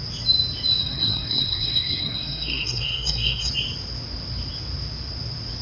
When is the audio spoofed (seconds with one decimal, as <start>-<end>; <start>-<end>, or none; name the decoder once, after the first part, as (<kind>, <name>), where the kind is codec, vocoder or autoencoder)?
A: 0.8-3.5 (codec, SNAC)